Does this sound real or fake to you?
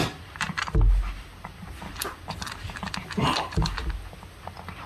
real